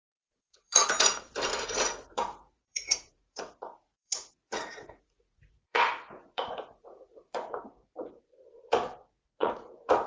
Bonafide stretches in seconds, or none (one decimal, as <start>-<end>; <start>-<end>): 0.8-1.6